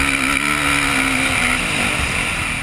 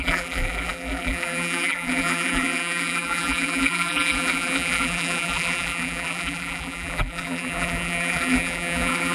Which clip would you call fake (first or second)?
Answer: second